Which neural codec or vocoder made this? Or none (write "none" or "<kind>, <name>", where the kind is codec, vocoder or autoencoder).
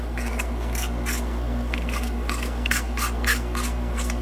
codec, SNAC